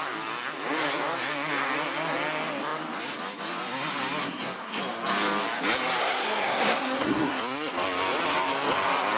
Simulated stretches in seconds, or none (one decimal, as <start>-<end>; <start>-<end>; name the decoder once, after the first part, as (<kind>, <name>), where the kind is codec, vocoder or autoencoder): 4.2-4.8 (codec, SNAC); 6.0-7.4